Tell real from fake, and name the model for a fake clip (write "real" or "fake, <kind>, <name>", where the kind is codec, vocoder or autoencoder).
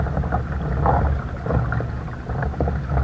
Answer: real